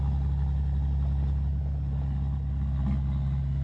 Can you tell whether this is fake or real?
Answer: real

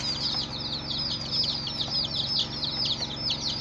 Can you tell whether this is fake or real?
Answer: real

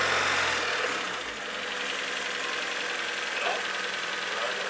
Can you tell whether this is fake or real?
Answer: real